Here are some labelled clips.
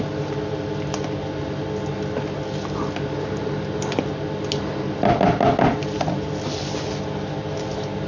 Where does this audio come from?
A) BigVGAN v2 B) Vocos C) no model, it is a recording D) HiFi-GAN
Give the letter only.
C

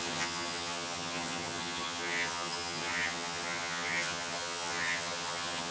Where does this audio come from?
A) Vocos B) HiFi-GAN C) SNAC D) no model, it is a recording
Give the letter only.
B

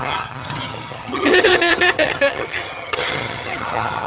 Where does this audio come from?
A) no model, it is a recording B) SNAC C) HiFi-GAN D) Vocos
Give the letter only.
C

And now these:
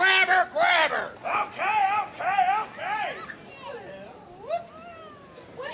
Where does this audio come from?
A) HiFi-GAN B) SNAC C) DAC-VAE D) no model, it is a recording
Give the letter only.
D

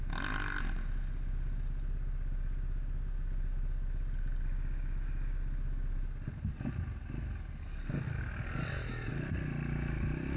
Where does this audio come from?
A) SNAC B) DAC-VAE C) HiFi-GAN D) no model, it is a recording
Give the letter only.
D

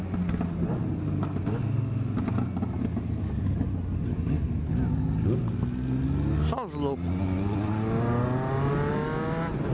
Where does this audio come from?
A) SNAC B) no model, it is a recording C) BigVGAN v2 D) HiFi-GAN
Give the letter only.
B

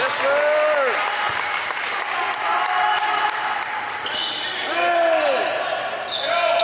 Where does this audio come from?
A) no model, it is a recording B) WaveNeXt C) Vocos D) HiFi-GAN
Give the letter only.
A